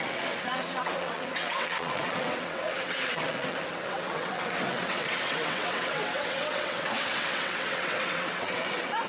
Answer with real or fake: fake